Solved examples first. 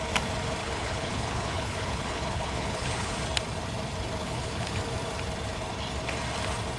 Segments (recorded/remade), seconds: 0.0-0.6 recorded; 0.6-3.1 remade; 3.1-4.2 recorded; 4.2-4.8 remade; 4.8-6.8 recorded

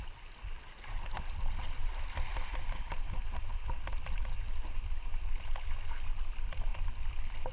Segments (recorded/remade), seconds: 0.0-7.5 recorded

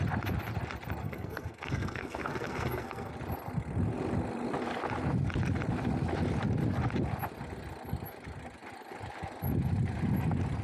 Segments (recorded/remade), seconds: 0.0-1.0 recorded; 1.0-3.1 remade; 3.1-10.6 recorded

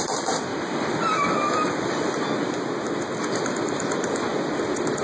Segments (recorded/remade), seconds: 0.0-0.5 recorded; 0.5-2.1 remade; 2.1-5.0 recorded

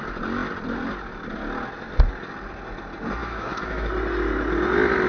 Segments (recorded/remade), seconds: 0.0-3.2 recorded; 3.2-3.9 remade; 3.9-5.1 recorded

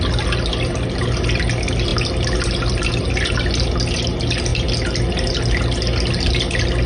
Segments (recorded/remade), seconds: 0.0-6.9 recorded

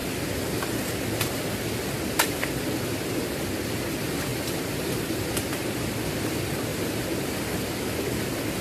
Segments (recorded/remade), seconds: 0.0-4.3 recorded; 4.3-5.3 remade; 5.3-6.7 recorded; 6.7-7.9 remade; 7.9-8.6 recorded